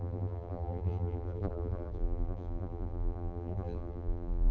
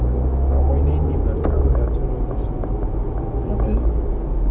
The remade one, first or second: first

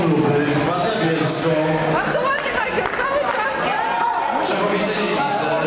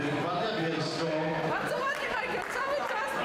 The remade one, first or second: second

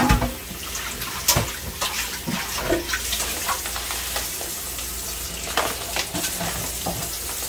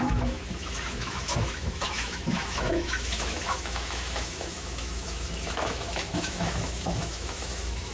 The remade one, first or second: second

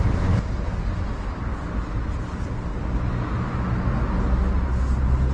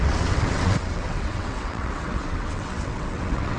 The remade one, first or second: second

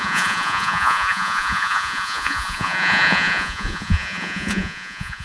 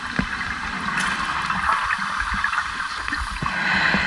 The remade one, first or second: first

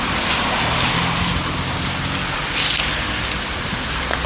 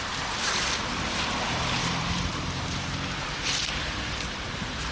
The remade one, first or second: second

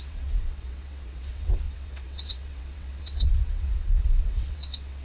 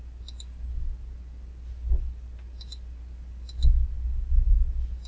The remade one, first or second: first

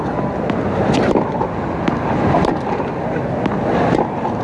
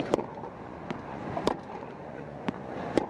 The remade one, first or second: second